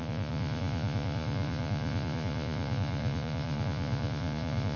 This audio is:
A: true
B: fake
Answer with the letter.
B